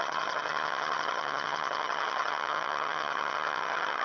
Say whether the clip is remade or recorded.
remade